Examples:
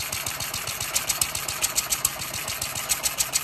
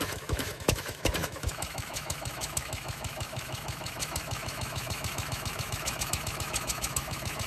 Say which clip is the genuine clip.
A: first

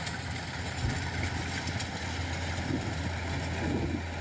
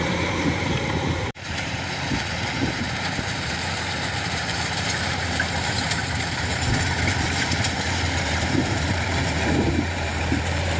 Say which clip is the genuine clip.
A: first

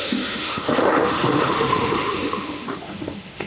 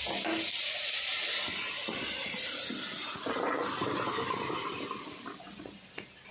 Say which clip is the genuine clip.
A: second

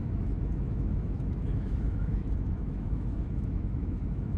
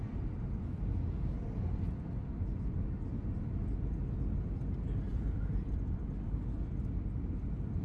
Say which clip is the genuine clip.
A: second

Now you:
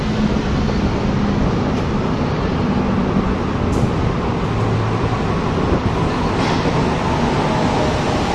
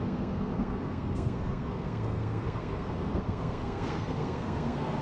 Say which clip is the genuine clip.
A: first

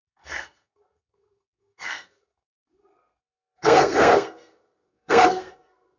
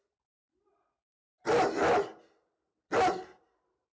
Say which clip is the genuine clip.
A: second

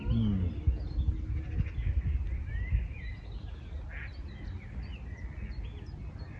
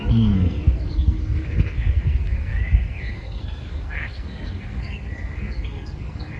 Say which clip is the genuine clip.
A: first